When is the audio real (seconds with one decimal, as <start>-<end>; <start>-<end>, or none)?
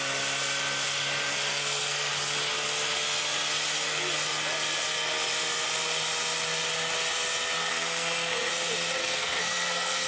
0.0-1.5; 2.1-7.7; 8.5-9.0